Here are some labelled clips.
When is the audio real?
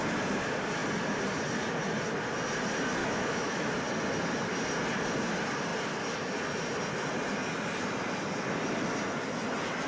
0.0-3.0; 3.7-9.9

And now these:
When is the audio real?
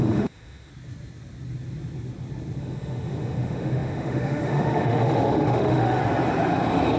0.7-2.6; 6.0-7.0